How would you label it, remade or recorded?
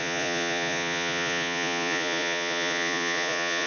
remade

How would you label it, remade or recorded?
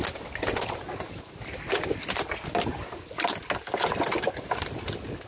recorded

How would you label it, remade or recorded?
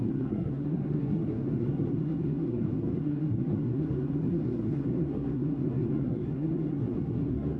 remade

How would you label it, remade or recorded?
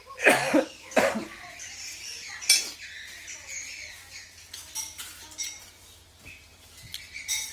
recorded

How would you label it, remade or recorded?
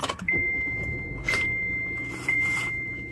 remade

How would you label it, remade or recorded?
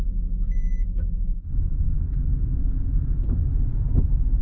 recorded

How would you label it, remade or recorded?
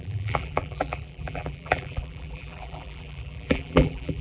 remade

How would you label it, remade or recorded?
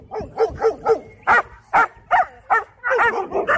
recorded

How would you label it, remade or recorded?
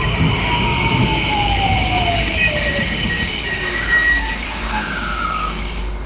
remade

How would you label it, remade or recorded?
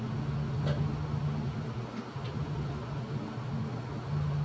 recorded